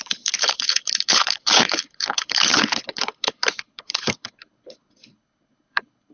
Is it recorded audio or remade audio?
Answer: remade